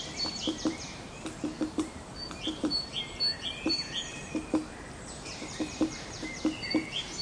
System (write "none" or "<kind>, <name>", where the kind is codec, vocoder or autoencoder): vocoder, BigVGAN v2